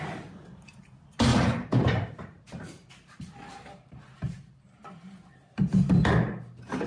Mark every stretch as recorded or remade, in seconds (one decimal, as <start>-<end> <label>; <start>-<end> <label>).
0.0-1.3 recorded; 1.3-5.3 remade; 5.3-6.9 recorded